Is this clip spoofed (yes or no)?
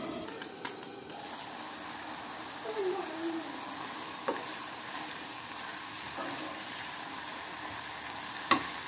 no